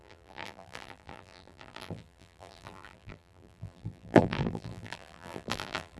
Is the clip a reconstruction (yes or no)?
yes